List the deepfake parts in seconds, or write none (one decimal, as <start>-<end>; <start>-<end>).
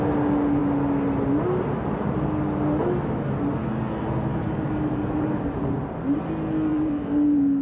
4.3-5.8; 6.7-7.6